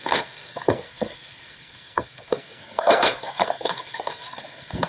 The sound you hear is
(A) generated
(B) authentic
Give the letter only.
A